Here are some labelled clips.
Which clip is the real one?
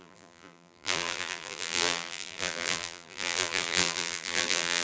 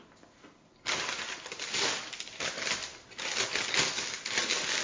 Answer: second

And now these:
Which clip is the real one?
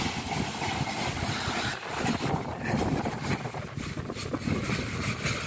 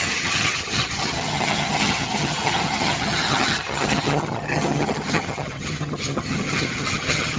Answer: first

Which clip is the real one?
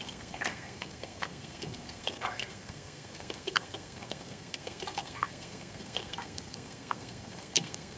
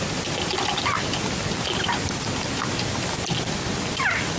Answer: second